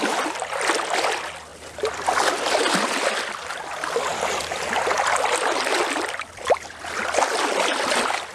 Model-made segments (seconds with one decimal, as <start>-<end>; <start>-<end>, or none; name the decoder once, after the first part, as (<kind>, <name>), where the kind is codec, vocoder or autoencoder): none